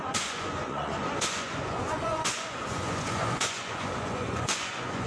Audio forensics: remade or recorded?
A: remade